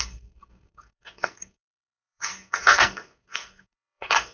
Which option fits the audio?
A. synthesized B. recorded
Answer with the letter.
A